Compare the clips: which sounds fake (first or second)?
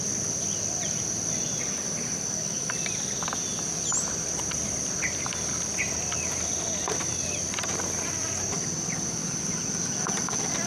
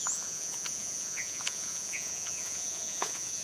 second